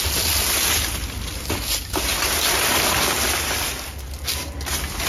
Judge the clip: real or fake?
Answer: real